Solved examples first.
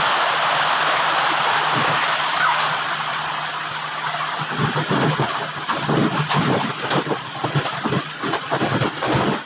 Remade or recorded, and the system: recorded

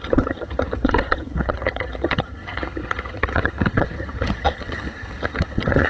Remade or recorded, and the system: remade, vocoder, HiFi-GAN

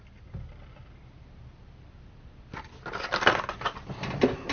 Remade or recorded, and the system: recorded